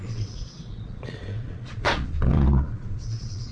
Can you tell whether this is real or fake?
fake